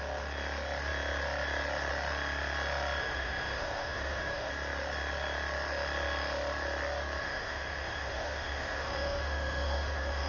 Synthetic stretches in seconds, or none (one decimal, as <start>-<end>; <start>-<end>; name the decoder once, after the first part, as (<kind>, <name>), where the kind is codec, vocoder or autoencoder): 3.0-4.5 (autoencoder, DAC-VAE); 7.2-10.3

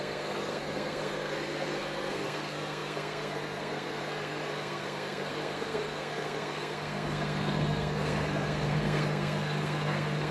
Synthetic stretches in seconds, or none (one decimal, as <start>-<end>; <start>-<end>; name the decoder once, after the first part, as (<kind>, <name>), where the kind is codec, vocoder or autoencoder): 0.0-10.3 (codec, SNAC)

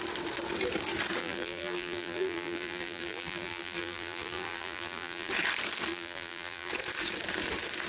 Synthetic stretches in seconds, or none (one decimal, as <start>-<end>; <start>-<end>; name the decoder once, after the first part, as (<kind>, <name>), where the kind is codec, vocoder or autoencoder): 1.2-5.3 (vocoder, BigVGAN v2); 5.9-6.7

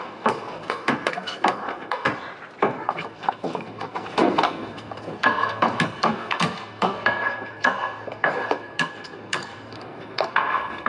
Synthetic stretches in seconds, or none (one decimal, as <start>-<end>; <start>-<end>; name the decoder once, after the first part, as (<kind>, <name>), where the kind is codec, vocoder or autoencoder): 0.0-2.1 (codec, SNAC); 2.6-10.9

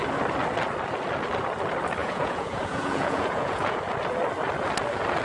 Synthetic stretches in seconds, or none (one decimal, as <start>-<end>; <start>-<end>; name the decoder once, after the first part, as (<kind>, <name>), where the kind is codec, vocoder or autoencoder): 2.0-3.8 (vocoder, Vocos)

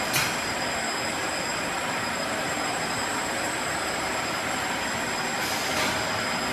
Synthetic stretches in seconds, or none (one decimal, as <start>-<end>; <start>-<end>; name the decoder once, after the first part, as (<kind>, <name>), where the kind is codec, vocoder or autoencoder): 1.5-5.4 (vocoder, BigVGAN v2)

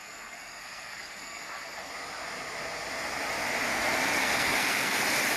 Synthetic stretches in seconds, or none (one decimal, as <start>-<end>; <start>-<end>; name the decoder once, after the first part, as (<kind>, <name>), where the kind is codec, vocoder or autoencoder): 0.0-1.9 (codec, SNAC); 3.7-5.0